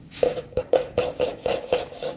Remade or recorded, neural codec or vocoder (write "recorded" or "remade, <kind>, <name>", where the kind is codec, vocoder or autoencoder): remade, codec, DAC